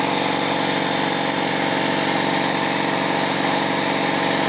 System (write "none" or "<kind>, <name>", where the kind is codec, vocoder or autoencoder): none